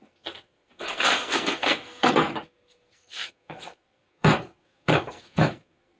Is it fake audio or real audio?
fake